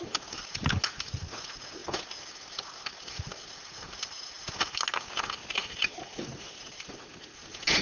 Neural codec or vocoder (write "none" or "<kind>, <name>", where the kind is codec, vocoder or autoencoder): none